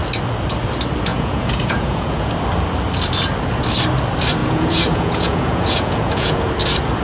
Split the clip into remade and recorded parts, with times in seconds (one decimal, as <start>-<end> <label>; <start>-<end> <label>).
0.0-1.1 recorded; 1.1-2.3 remade; 2.3-4.4 recorded; 4.4-6.5 remade; 6.5-7.0 recorded